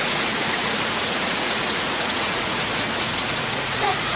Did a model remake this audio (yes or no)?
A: yes